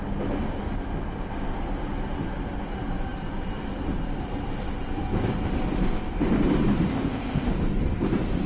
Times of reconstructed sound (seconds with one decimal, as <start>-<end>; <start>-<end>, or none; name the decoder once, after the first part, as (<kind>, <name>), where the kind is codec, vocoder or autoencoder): 6.9-7.5 (codec, ZipCodec)